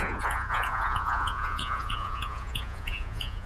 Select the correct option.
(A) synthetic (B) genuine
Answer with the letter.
A